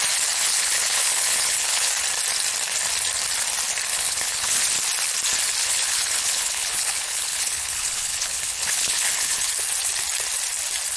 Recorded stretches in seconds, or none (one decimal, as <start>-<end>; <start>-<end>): 0.0-0.4; 1.9-3.9; 4.6-5.6; 9.5-11.0

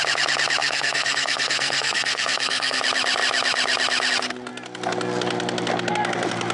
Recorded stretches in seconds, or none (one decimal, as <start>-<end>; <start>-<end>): 0.0-0.6; 2.8-6.5

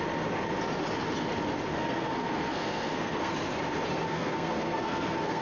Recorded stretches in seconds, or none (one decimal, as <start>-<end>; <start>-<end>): 0.0-1.7; 3.3-3.9

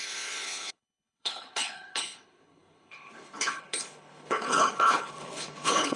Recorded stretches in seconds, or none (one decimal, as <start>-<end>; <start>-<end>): none

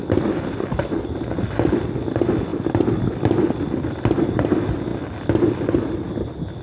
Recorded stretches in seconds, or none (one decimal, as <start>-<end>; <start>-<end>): 0.0-6.6

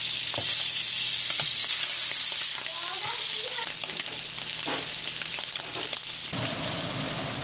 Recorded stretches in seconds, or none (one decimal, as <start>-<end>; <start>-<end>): 0.0-1.6; 3.0-5.0; 5.6-6.2; 6.8-7.4